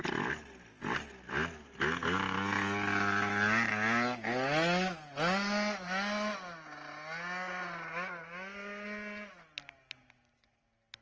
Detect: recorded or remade recorded